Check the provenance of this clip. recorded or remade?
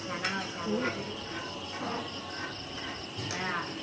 recorded